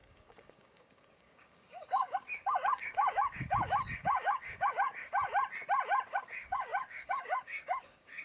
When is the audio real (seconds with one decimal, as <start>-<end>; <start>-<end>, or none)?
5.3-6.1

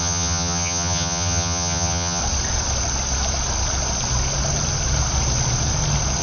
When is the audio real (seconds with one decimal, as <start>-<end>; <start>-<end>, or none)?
2.2-6.2

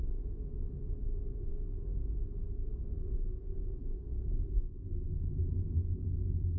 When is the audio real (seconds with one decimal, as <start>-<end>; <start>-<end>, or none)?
0.0-1.5; 5.0-6.6

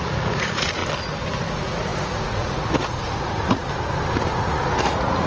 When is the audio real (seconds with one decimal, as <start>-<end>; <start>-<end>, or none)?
0.8-1.5; 3.6-4.3

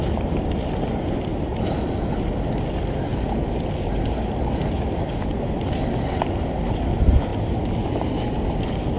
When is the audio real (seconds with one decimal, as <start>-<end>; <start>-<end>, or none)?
1.3-2.6; 3.1-6.7; 7.3-8.6

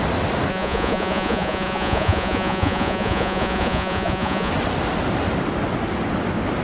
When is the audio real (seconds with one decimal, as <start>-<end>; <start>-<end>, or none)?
0.0-0.5; 4.5-6.6

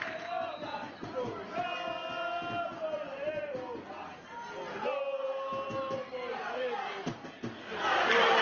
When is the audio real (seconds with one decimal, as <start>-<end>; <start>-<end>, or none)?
0.0-8.4